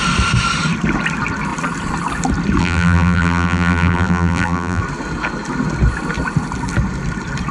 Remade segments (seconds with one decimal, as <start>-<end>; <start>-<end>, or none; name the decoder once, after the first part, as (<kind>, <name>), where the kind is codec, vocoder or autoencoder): 2.6-4.8 (vocoder, BigVGAN v2)